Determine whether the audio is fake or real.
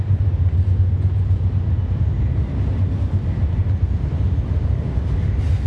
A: real